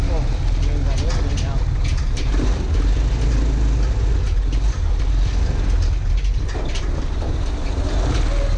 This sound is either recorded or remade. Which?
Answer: recorded